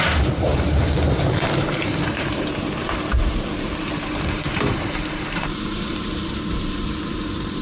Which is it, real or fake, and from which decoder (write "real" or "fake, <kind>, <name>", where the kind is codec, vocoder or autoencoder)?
fake, vocoder, BigVGAN v2